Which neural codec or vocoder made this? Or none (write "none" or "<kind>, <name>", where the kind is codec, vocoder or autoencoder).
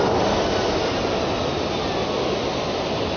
none